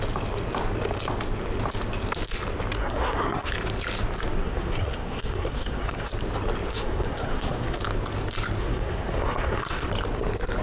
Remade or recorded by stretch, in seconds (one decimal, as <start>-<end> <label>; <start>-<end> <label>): 0.0-2.8 recorded; 2.8-3.5 remade; 3.5-4.4 recorded; 4.4-6.1 remade; 6.1-6.7 recorded; 6.7-7.8 remade; 7.8-8.6 recorded; 8.6-9.9 remade; 9.9-10.6 recorded